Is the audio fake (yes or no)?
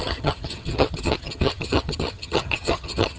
yes